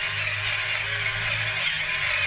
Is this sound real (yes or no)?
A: yes